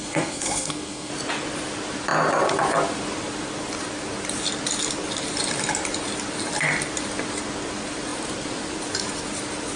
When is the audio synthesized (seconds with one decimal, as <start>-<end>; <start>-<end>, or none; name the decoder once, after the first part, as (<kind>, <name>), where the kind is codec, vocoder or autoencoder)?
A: 0.0-1.1 (codec, SNAC)